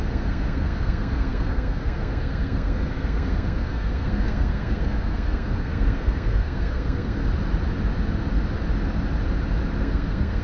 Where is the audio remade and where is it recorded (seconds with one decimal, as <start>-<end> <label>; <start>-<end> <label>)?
0.0-7.2 remade; 7.2-9.8 recorded; 9.8-10.4 remade